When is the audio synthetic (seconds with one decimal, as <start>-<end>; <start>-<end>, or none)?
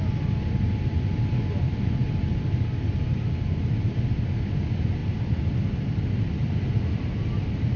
none